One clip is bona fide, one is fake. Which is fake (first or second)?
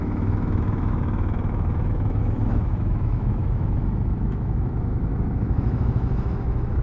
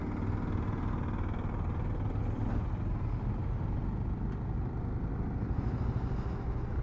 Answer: first